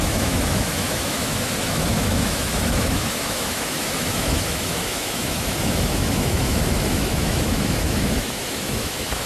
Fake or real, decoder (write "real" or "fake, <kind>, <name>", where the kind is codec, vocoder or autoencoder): fake, autoencoder, DAC-VAE